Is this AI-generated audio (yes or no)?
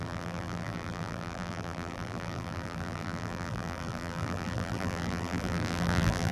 yes